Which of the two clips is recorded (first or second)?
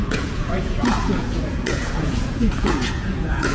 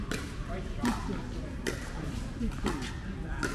second